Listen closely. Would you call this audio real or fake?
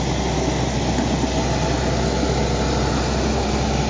real